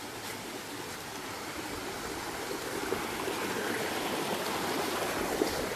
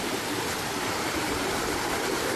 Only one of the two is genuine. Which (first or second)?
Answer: first